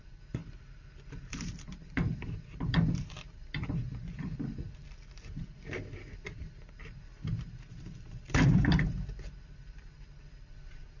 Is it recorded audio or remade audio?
remade